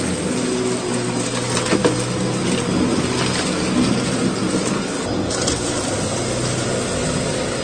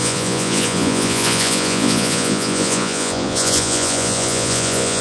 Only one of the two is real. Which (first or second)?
first